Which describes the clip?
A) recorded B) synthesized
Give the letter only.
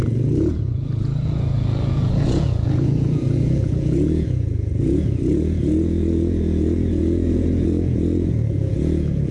B